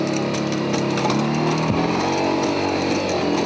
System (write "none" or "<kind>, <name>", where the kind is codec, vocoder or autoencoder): none